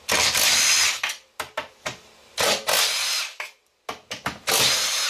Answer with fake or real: real